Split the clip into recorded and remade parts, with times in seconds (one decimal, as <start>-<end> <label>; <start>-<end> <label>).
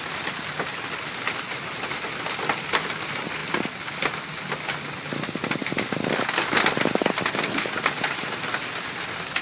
0.0-5.6 recorded; 5.6-7.7 remade; 7.7-9.4 recorded